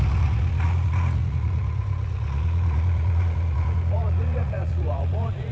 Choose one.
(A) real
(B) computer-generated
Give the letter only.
B